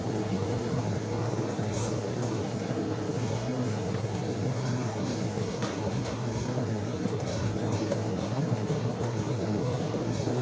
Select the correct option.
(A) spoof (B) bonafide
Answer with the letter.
A